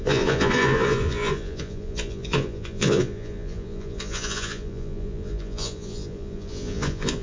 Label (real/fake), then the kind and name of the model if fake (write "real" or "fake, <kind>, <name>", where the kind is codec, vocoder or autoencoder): fake, vocoder, Vocos